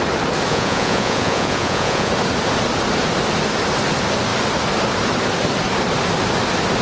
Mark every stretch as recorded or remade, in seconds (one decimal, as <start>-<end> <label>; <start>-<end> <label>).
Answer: 0.0-0.5 recorded; 0.5-2.1 remade; 2.1-6.8 recorded